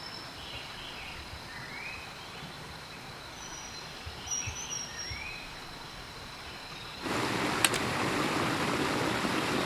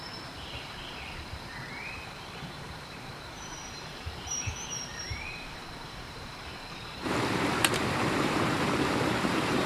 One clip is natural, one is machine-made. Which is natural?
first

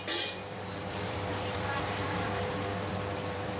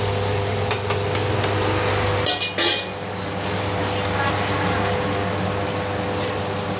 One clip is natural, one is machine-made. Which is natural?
second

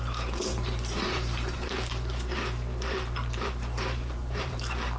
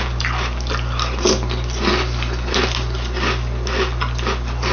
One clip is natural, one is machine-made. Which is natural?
second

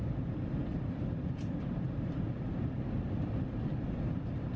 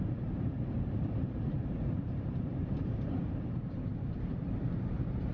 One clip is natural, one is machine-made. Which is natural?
first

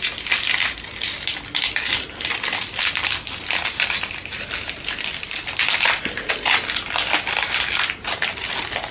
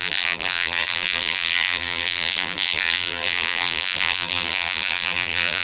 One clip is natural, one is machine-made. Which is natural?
first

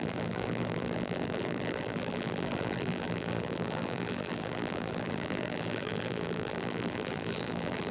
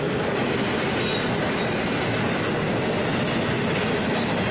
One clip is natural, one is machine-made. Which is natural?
second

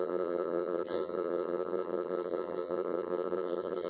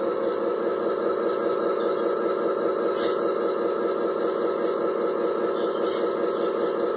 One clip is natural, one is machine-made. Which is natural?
second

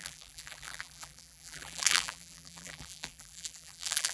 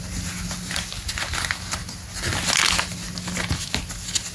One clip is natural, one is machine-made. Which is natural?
second